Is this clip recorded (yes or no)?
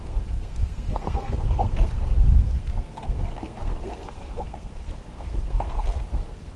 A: no